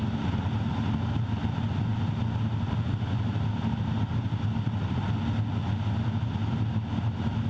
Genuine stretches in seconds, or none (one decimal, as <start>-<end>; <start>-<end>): 0.0-7.5